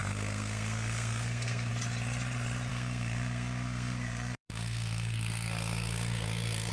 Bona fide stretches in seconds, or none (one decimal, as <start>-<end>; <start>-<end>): 1.7-2.7